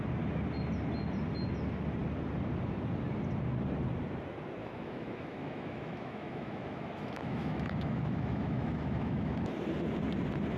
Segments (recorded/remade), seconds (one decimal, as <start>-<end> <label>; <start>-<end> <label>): 0.0-4.6 recorded; 4.6-9.5 remade; 9.5-10.6 recorded